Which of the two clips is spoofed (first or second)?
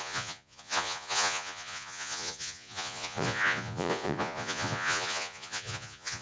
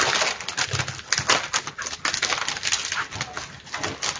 first